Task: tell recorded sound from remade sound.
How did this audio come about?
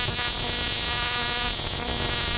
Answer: recorded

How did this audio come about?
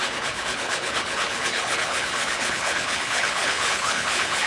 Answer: remade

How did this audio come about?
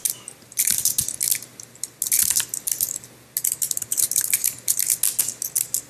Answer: recorded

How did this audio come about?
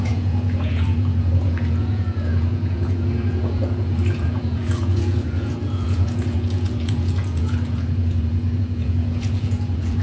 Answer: remade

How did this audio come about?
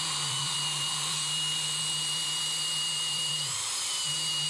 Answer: remade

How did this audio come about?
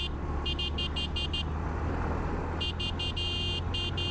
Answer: recorded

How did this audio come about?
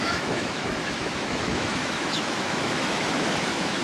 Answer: remade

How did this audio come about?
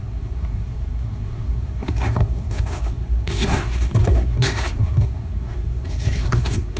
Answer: remade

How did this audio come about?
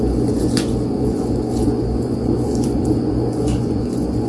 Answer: remade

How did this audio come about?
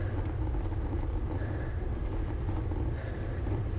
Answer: recorded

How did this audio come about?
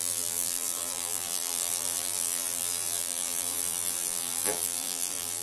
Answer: remade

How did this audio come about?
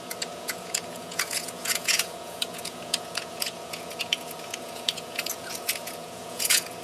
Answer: remade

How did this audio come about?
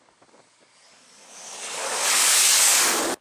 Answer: remade